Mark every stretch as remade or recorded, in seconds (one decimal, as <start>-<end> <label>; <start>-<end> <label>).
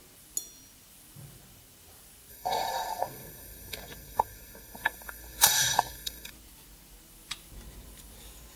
0.0-2.3 recorded; 2.3-6.3 remade; 6.3-8.6 recorded